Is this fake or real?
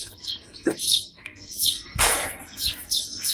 fake